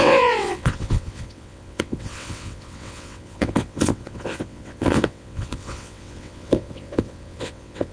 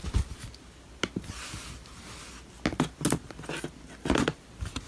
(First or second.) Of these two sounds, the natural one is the second